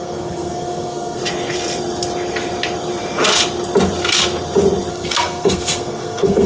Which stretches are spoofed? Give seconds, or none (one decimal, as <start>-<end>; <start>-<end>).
0.0-1.2; 4.9-6.5